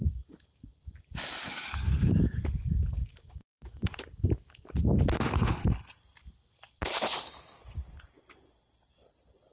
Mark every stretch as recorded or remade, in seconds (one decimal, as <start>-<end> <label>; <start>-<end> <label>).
0.0-9.5 recorded